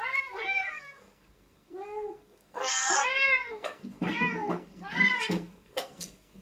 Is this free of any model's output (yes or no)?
no